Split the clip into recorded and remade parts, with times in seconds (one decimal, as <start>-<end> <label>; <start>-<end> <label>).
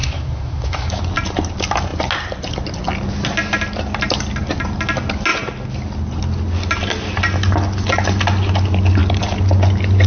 0.0-1.0 remade; 1.0-10.1 recorded